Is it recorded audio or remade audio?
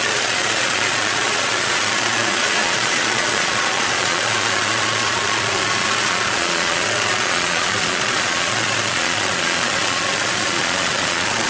remade